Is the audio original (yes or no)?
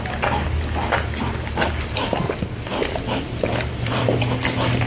yes